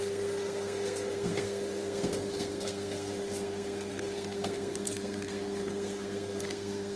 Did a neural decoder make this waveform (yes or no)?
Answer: yes